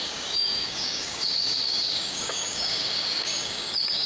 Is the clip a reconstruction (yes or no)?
yes